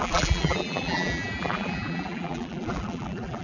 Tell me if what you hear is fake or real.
fake